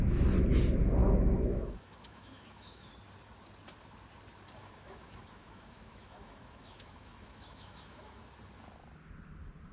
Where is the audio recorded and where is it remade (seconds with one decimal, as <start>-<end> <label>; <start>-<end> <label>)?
0.0-1.0 recorded; 1.0-2.9 remade; 2.9-4.6 recorded; 4.6-8.2 remade; 8.2-9.7 recorded